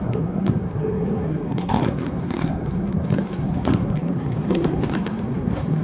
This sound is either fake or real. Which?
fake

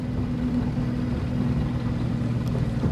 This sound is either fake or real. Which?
real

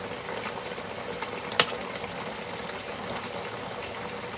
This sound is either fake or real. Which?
real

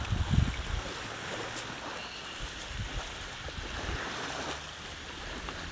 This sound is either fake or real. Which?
real